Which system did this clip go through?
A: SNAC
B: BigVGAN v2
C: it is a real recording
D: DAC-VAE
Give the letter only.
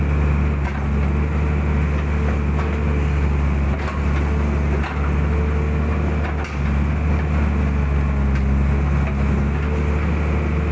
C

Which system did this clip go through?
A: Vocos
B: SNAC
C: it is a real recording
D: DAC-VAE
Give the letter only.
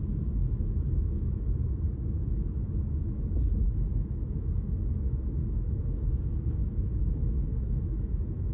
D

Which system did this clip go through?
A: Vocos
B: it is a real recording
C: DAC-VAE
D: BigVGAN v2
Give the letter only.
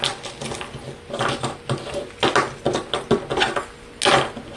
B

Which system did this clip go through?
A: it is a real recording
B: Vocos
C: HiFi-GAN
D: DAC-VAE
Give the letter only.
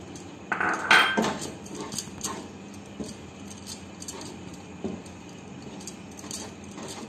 A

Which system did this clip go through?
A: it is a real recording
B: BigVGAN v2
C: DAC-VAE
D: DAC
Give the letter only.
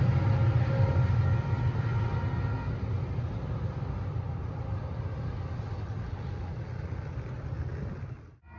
A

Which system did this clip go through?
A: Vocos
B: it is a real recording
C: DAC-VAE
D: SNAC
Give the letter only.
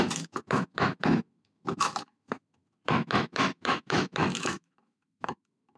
C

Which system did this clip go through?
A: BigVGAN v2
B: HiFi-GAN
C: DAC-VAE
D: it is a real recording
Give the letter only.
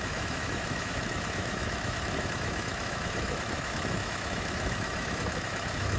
C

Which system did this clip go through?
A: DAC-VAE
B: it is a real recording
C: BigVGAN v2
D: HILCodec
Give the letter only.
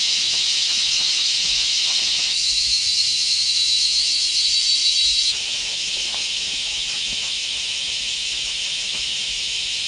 A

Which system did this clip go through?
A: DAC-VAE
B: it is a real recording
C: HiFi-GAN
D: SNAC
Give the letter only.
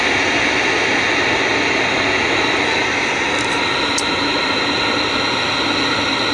B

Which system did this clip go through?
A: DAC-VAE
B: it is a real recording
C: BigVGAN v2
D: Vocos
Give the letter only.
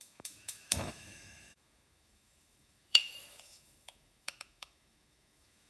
A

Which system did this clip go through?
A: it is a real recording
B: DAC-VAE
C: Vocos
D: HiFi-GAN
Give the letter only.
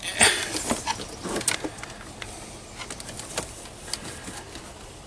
A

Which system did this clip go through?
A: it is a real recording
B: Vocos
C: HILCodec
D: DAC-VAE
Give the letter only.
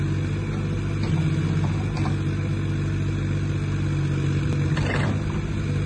A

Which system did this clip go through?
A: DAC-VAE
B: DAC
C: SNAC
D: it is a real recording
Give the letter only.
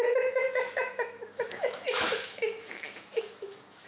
A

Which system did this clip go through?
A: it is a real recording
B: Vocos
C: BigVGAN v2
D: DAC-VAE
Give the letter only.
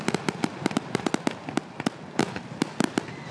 A